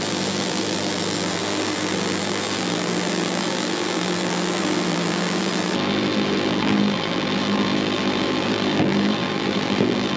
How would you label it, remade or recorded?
remade